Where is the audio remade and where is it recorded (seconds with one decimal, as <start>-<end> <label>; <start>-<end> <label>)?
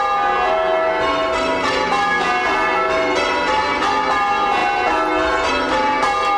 0.0-6.4 recorded